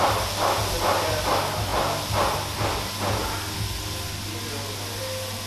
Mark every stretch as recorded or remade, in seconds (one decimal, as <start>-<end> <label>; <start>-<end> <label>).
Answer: 0.0-5.5 recorded